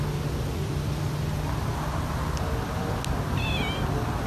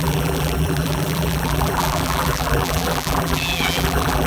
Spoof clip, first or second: second